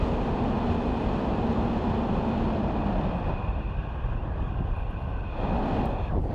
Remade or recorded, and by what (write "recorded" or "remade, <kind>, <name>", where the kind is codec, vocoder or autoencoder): recorded